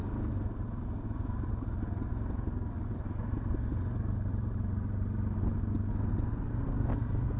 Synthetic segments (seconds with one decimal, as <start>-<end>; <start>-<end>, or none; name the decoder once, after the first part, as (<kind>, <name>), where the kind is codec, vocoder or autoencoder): none